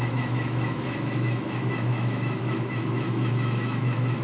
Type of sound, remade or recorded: remade